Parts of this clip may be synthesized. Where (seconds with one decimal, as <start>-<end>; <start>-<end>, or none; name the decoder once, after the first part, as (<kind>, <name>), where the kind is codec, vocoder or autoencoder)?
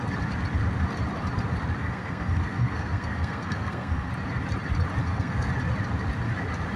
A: 1.8-4.1 (codec, SNAC); 5.0-5.5